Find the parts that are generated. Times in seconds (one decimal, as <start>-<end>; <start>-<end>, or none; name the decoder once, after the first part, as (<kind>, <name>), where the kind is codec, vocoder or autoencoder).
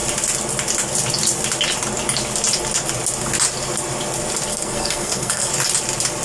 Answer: 4.5-5.5 (codec, SNAC)